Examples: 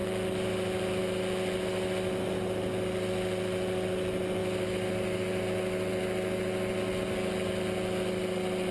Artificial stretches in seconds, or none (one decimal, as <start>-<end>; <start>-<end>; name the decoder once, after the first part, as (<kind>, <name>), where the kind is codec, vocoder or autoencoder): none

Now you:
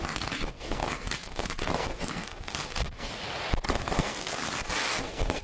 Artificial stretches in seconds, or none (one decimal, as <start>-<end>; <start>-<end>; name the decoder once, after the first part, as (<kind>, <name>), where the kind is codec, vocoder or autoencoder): 0.0-3.1 (codec, SNAC); 3.7-4.4; 5.0-5.4

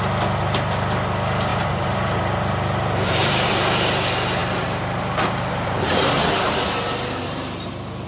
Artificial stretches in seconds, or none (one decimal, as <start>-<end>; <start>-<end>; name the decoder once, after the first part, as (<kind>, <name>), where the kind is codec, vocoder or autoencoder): 1.5-3.5 (vocoder, BigVGAN v2); 4.4-6.6